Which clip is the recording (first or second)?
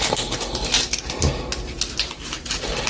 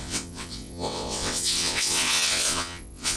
first